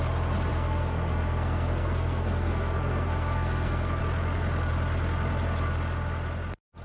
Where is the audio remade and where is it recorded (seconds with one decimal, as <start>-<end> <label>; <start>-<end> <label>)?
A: 0.0-0.5 recorded; 0.5-4.0 remade; 4.0-6.8 recorded